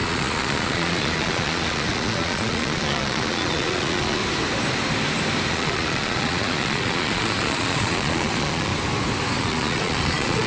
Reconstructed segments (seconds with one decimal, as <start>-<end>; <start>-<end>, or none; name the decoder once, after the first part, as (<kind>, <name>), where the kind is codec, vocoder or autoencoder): 0.0-4.2 (vocoder, Vocos); 5.5-8.7; 9.4-10.5

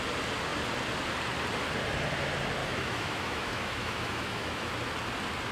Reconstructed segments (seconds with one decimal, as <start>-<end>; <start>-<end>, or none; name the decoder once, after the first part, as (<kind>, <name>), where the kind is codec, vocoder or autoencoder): 2.6-4.7 (autoencoder, DAC-VAE)

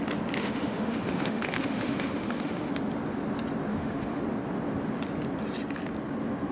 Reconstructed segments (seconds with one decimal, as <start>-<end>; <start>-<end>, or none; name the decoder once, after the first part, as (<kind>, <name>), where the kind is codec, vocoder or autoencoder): 0.4-2.7 (autoencoder, DAC-VAE); 3.7-4.2

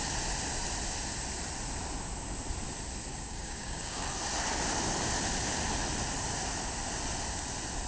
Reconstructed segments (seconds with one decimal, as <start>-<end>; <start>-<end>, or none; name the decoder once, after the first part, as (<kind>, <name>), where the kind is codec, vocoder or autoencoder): 3.1-4.1 (codec, DAC)

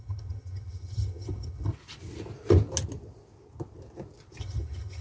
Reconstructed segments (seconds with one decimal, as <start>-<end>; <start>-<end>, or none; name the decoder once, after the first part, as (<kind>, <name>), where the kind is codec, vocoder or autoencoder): 0.0-1.7 (vocoder, HiFi-GAN); 4.4-5.0